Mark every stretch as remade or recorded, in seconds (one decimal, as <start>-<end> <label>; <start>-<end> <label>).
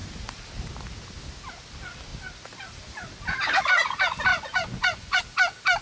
0.0-4.3 recorded; 4.3-5.2 remade; 5.2-5.8 recorded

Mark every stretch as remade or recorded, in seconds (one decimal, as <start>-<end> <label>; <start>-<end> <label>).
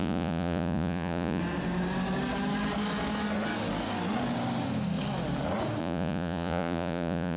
0.0-1.4 remade; 1.4-5.8 recorded; 5.8-7.4 remade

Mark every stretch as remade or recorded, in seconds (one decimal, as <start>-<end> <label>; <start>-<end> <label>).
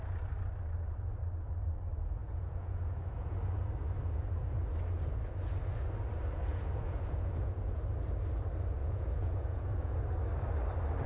0.0-2.2 recorded; 2.2-3.5 remade; 3.5-6.5 recorded; 6.5-7.8 remade; 7.8-8.8 recorded; 8.8-10.0 remade; 10.0-11.1 recorded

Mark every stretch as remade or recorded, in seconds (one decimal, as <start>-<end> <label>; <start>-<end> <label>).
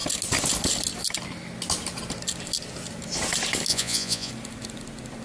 0.0-3.7 recorded; 3.7-4.3 remade; 4.3-5.2 recorded